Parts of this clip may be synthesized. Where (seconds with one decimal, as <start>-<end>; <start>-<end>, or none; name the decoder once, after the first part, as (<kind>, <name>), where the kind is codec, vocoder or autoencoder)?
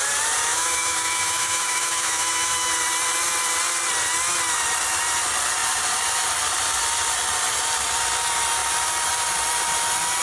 0.5-2.7 (autoencoder, DAC-VAE)